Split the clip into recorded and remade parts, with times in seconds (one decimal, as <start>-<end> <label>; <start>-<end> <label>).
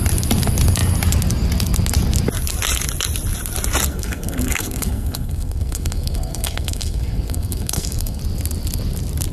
0.0-3.9 recorded; 3.9-8.2 remade; 8.2-9.3 recorded